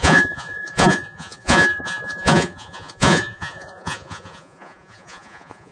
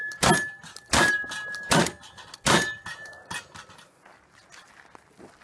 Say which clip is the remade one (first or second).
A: first